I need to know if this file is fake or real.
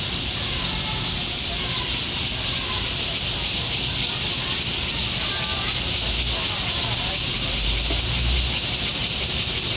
real